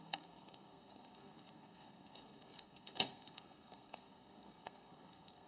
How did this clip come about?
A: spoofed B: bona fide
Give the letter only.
A